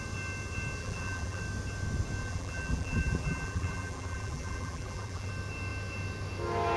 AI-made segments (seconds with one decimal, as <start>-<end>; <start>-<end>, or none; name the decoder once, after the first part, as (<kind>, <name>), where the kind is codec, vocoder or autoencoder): 0.8-1.4 (vocoder, BigVGAN v2); 2.2-5.3